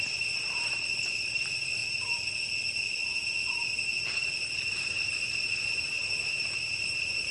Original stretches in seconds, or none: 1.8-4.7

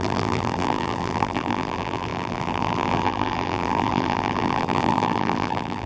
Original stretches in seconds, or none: none

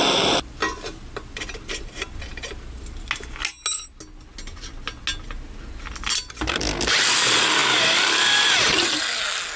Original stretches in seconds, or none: 0.0-9.6

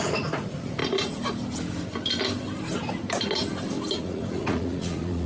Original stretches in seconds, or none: 0.8-4.0

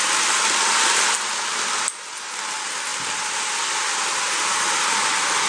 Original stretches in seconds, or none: 0.0-5.5

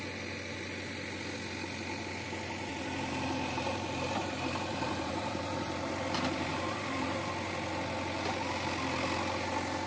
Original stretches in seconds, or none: 0.0-2.7; 7.5-9.9

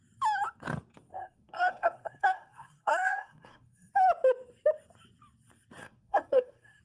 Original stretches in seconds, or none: 0.0-1.1; 3.9-5.8

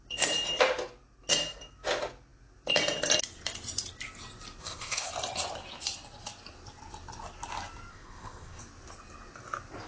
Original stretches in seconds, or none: 0.0-4.6; 5.1-7.9; 8.6-9.9